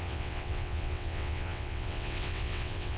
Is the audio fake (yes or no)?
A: yes